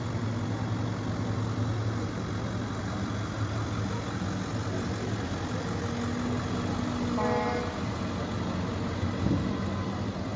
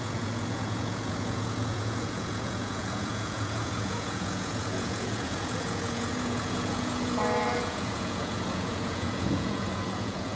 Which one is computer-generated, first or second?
second